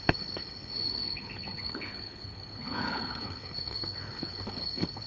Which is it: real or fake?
fake